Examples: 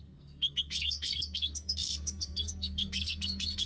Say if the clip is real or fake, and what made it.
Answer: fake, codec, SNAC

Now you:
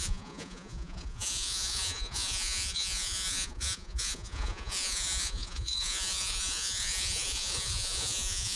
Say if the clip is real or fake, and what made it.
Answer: fake, vocoder, Vocos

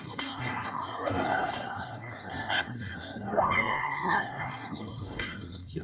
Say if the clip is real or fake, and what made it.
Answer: fake, codec, SNAC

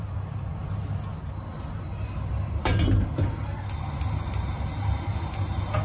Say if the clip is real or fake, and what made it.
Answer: real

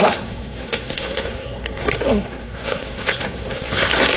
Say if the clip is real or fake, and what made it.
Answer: fake, codec, SNAC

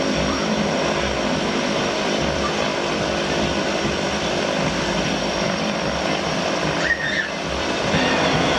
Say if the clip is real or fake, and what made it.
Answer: fake, vocoder, BigVGAN v2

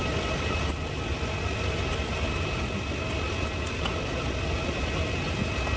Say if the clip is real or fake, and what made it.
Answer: real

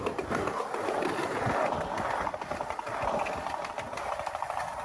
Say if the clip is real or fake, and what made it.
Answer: real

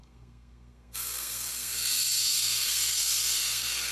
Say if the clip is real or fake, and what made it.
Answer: fake, codec, SNAC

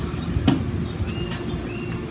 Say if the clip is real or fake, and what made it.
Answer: real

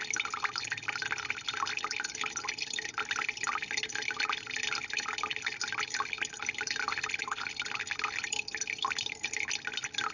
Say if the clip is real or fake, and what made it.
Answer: real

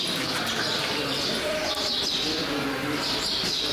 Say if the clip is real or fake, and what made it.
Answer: fake, vocoder, BigVGAN v2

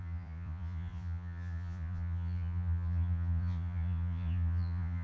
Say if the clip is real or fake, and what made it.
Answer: fake, vocoder, Vocos